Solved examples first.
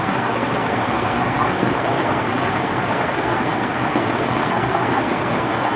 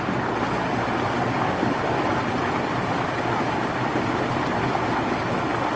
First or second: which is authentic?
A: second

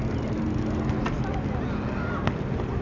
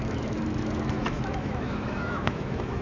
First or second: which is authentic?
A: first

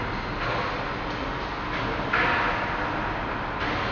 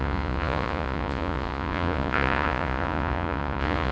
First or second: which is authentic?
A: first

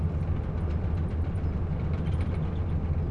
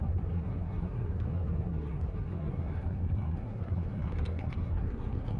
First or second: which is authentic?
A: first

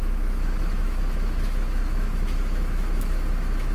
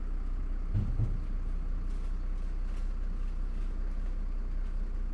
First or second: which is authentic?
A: second